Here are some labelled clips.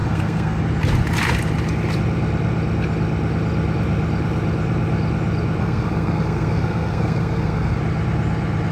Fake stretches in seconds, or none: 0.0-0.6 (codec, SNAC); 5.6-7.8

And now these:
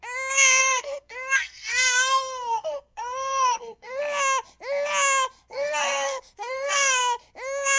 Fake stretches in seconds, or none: 0.6-4.0 (codec, SNAC); 5.5-7.0

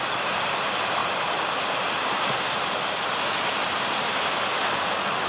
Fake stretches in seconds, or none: none

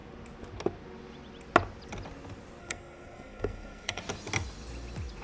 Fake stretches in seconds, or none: 2.6-4.0 (codec, SNAC)

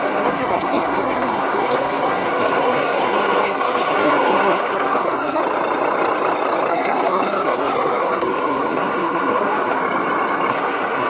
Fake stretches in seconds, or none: 0.0-5.4 (codec, SNAC); 6.7-9.8; 10.5-11.1

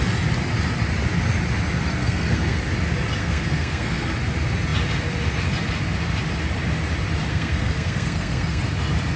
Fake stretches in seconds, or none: 2.0-2.6 (codec, SNAC); 3.2-4.1; 7.3-8.6